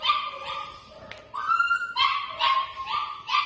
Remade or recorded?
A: recorded